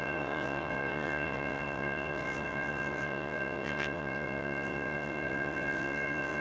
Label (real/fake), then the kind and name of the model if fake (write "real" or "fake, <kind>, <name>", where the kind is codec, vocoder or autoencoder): fake, vocoder, WaveNeXt